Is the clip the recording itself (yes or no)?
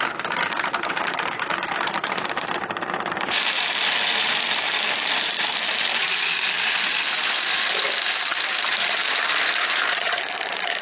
no